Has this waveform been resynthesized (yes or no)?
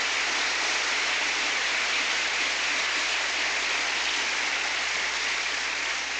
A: no